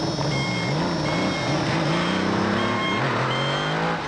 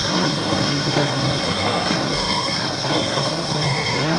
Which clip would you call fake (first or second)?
second